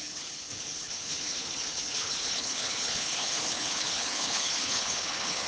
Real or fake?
fake